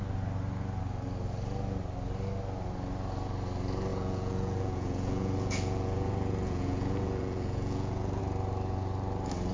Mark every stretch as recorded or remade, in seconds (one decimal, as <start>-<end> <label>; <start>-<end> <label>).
0.0-3.9 recorded; 3.9-8.2 remade; 8.2-9.5 recorded